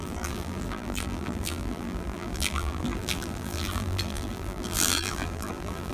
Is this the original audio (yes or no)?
no